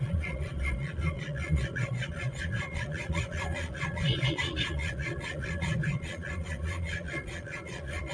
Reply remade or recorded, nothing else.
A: remade